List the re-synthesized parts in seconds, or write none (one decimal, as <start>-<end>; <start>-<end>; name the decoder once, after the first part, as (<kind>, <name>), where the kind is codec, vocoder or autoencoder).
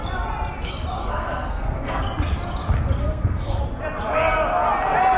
1.0-2.0 (codec, SNAC); 3.0-3.6